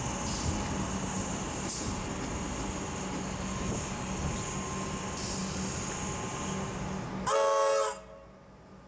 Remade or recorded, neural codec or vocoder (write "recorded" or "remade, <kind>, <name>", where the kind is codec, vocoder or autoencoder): recorded